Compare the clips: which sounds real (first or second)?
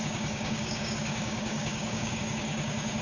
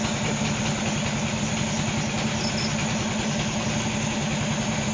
second